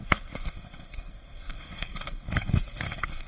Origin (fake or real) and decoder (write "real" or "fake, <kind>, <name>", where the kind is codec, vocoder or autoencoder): fake, codec, SNAC